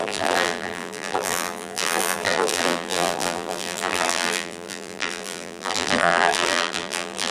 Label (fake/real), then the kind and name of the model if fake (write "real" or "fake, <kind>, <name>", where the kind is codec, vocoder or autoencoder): fake, vocoder, BigVGAN v2